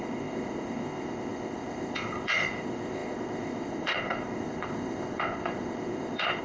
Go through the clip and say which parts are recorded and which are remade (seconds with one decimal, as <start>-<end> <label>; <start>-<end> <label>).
0.0-6.4 remade